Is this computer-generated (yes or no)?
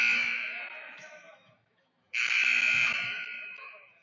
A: yes